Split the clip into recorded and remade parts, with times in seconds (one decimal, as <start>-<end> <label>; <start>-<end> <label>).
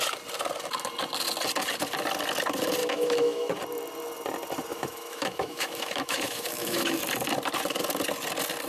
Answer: 0.0-2.8 recorded; 2.8-3.5 remade; 3.5-4.7 recorded; 4.7-7.0 remade; 7.0-8.7 recorded